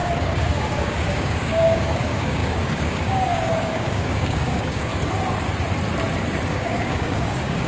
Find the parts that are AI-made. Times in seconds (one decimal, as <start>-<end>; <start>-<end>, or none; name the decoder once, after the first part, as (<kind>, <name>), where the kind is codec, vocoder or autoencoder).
0.0-4.9 (codec, DAC); 6.5-7.7

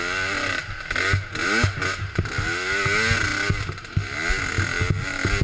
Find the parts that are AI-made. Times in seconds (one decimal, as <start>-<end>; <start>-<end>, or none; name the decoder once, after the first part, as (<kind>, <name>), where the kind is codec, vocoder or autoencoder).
none

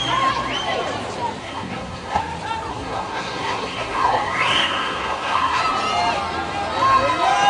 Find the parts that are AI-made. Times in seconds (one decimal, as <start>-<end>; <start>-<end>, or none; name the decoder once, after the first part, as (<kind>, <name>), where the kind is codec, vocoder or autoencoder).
1.4-2.2 (codec, SNAC); 2.7-5.6

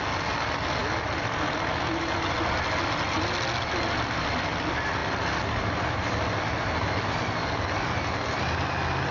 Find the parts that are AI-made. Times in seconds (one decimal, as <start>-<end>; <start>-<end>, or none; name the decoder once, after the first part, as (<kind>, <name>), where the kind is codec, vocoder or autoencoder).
none